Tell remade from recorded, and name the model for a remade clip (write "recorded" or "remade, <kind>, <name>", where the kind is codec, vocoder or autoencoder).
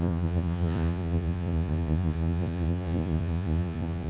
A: remade, vocoder, Vocos